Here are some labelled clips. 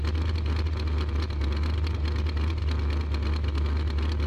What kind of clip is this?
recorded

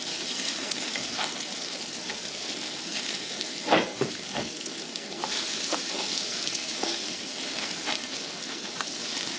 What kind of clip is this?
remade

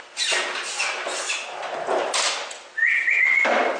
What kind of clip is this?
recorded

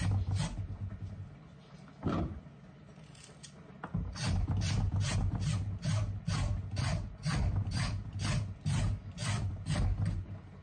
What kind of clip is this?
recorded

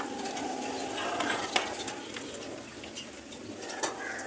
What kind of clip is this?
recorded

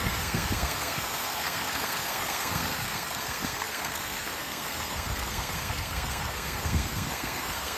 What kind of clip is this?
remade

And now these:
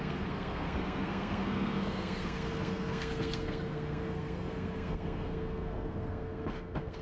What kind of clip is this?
remade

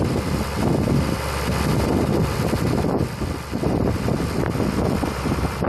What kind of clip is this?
recorded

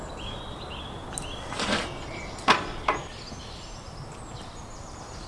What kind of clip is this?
recorded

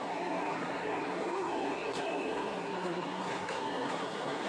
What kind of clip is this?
remade